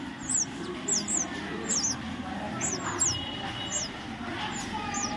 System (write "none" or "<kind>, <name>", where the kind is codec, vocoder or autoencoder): none